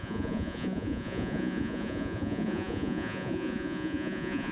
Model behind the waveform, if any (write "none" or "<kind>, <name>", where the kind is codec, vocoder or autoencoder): vocoder, Vocos